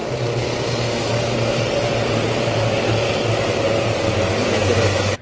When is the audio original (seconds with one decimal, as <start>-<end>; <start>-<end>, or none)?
0.0-5.2